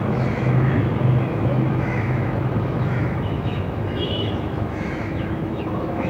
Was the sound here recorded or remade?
remade